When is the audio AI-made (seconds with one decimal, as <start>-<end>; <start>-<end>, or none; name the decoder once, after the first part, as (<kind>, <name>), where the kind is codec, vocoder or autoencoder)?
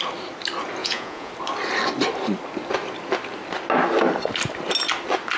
0.8-1.3 (vocoder, Vocos)